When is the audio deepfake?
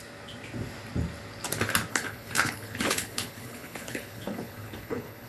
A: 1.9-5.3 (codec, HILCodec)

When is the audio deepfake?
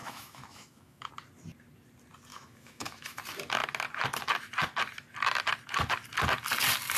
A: 0.0-1.1 (autoencoder, DAC-VAE); 2.3-3.2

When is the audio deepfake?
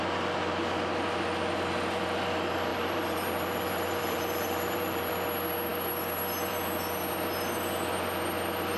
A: 2.7-5.1 (vocoder, BigVGAN v2)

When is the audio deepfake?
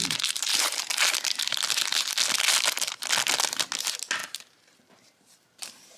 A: 0.0-1.0 (vocoder, BigVGAN v2); 4.2-6.0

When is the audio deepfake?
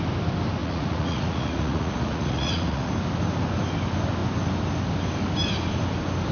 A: 0.6-2.9 (vocoder, Vocos)